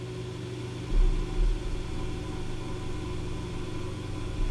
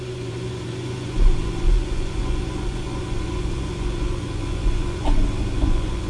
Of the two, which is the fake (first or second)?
second